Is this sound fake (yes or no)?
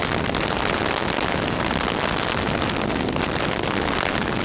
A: no